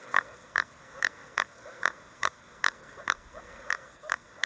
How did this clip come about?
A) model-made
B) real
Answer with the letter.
A